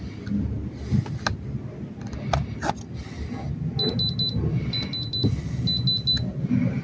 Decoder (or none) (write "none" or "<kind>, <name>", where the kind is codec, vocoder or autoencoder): none